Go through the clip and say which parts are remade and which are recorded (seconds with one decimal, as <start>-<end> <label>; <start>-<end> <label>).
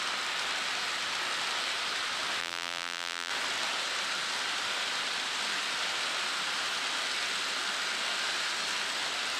0.0-2.4 recorded; 2.4-3.3 remade; 3.3-9.4 recorded